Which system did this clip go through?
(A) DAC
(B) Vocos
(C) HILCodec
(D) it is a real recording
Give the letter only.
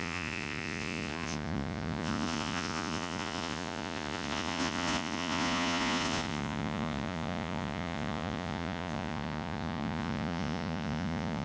B